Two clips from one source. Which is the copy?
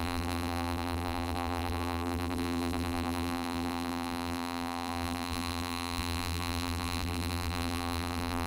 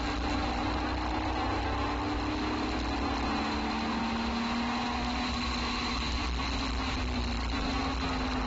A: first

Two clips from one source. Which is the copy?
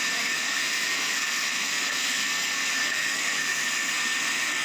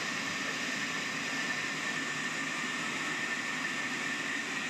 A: first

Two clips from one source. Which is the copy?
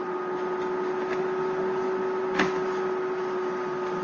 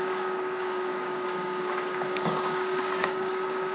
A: second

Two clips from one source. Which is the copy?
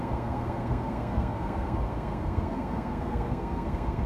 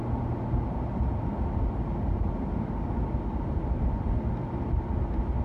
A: first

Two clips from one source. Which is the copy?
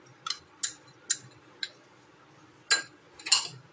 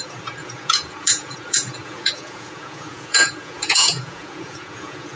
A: second